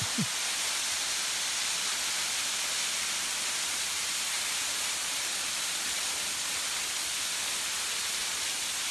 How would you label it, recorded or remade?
recorded